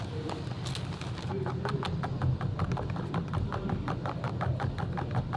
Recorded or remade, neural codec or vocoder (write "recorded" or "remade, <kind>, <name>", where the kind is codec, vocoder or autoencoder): recorded